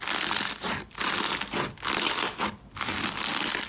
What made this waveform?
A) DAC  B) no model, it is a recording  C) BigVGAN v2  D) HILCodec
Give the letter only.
B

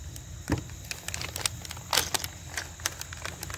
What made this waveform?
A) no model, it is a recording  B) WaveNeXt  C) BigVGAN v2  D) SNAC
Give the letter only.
A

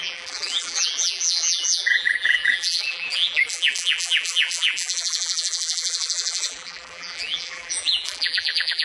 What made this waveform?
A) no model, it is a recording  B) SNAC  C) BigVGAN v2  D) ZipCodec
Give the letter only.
C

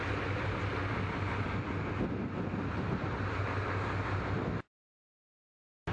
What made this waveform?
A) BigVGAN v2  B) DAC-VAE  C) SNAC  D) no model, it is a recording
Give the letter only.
D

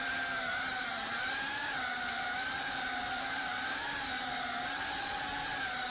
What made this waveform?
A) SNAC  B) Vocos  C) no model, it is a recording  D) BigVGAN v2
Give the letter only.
C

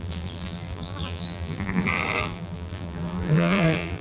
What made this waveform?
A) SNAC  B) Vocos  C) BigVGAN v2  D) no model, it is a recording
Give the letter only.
C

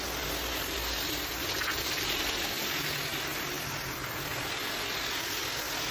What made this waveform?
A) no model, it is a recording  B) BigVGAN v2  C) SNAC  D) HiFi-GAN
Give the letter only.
A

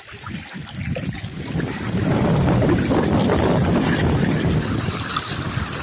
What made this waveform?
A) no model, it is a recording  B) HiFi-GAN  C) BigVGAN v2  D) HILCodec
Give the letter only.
A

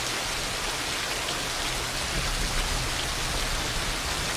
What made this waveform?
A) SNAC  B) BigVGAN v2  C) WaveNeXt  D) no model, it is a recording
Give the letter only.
D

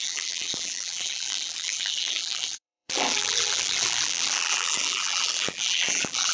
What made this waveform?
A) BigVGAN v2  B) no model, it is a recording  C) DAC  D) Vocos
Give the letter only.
A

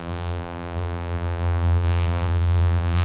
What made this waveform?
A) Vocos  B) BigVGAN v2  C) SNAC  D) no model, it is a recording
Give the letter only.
B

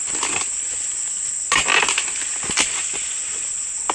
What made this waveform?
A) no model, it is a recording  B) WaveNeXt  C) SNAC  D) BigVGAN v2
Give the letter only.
A